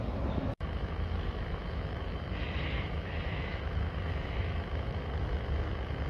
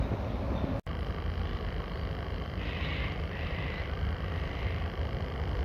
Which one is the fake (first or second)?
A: first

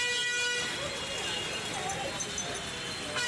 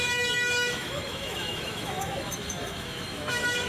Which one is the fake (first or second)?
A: second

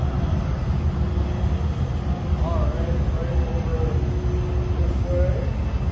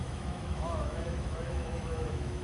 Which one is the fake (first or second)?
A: second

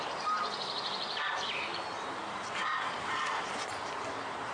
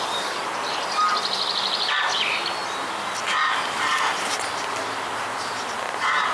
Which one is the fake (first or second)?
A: first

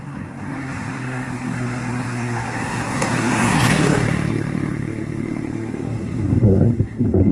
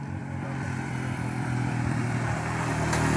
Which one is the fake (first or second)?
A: first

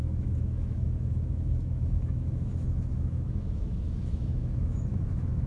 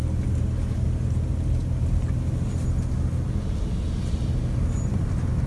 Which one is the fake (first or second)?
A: first